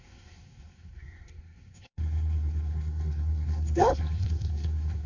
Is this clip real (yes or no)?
no